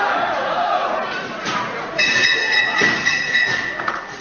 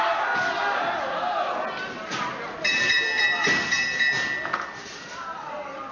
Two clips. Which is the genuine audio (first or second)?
second